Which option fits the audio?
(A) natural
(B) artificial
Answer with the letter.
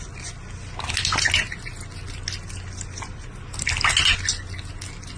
A